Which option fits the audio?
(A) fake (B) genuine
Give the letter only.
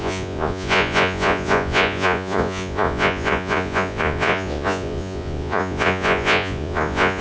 A